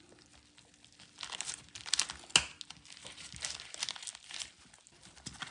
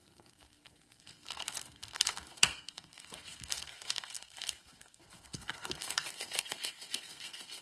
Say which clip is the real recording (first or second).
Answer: first